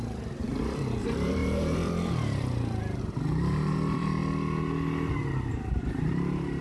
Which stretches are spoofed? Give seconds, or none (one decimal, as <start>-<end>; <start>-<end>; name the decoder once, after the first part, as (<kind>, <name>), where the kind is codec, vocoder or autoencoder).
0.0-4.2 (vocoder, BigVGAN v2); 5.5-6.6